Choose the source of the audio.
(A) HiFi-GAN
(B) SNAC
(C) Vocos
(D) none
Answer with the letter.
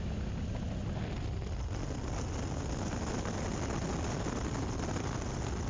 D